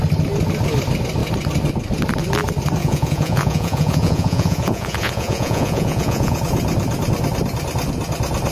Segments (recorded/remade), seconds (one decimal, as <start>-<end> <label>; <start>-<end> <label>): 0.0-2.8 recorded; 2.8-6.4 remade; 6.4-8.5 recorded